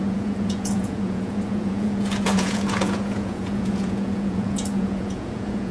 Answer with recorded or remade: remade